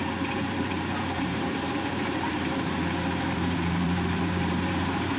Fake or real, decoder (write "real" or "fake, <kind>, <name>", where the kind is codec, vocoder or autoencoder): fake, vocoder, BigVGAN v2